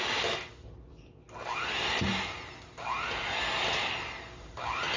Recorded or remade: recorded